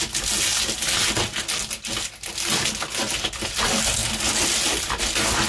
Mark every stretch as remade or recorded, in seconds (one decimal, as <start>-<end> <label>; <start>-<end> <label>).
0.0-5.5 recorded